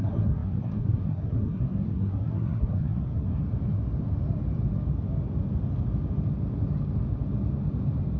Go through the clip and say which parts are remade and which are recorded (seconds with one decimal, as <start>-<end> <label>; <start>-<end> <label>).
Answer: 0.0-3.4 remade; 3.4-8.2 recorded